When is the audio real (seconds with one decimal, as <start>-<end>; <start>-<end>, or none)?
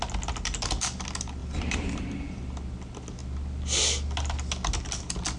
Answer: 0.0-1.4; 2.4-5.4